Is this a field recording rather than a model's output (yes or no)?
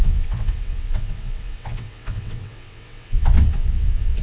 no